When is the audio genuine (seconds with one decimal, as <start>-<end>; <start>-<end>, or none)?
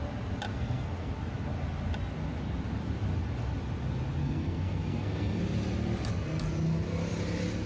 0.0-0.5; 1.1-4.2; 5.4-7.7